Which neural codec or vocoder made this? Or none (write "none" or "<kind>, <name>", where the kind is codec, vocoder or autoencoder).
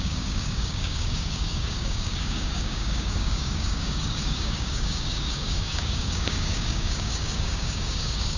codec, DAC